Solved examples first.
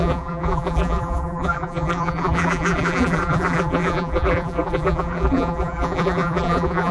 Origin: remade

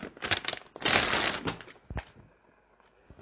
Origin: recorded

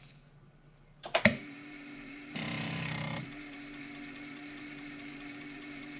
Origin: remade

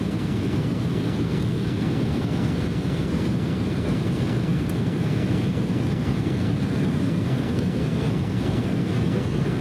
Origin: remade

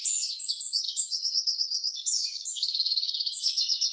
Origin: remade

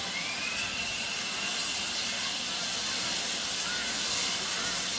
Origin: recorded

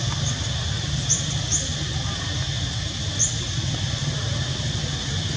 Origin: recorded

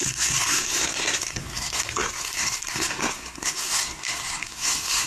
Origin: remade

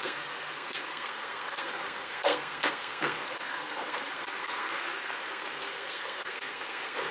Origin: remade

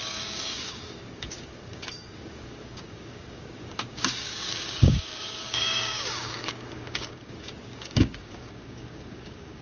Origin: remade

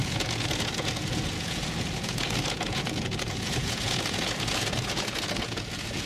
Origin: remade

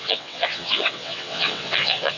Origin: remade